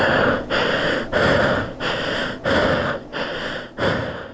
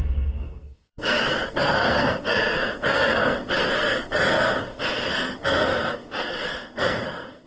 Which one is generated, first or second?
second